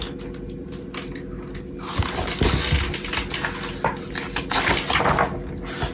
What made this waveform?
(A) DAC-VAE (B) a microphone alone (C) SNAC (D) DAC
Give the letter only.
B